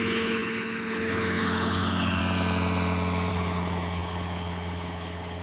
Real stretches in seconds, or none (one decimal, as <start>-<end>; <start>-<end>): 2.2-3.3